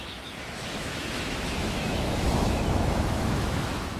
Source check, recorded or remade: remade